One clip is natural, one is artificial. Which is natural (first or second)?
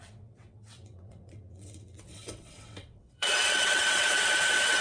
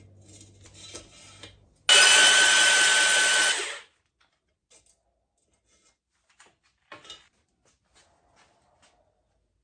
second